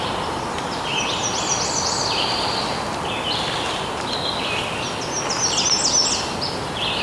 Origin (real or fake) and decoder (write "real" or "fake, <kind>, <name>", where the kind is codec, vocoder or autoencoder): real